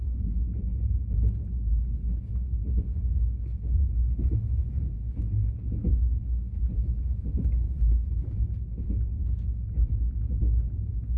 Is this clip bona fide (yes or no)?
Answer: yes